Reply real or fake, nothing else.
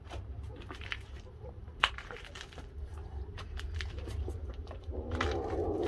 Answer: fake